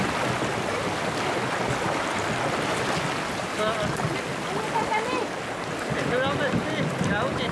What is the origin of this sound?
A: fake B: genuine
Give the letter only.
B